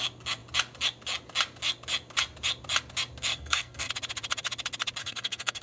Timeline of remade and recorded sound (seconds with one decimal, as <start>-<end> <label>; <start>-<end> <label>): 0.0-3.3 recorded; 3.3-3.9 remade; 3.9-5.0 recorded; 5.0-5.6 remade

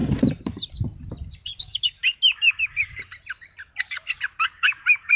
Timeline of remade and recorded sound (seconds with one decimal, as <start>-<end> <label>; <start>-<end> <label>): 0.0-1.6 recorded; 1.6-2.0 remade; 2.0-5.2 recorded

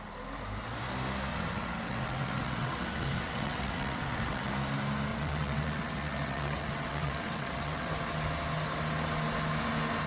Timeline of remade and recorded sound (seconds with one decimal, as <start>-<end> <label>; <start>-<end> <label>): 0.0-1.3 recorded; 1.3-4.5 remade; 4.5-5.1 recorded; 5.1-7.9 remade; 7.9-10.1 recorded

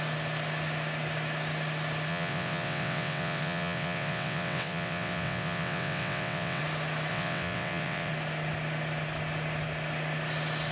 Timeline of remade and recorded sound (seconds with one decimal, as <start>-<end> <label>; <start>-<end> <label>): 0.0-2.1 recorded; 2.1-6.6 remade; 6.6-7.1 recorded; 7.1-8.1 remade; 8.1-10.7 recorded